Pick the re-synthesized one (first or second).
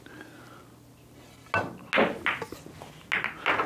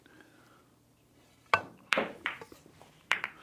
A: second